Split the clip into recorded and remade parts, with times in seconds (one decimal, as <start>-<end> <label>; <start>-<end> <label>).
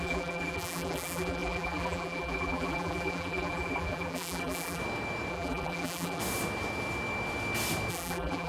0.0-4.8 remade; 4.8-5.3 recorded; 5.3-6.2 remade; 6.2-7.9 recorded; 7.9-8.5 remade